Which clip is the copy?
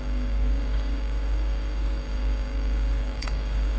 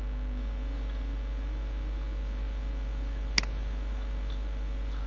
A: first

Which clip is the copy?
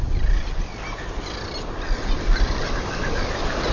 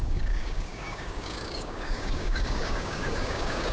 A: second